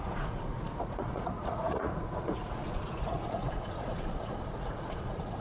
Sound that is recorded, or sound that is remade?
remade